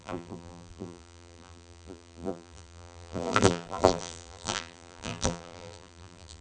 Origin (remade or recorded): remade